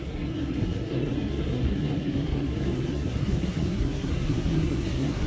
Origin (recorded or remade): remade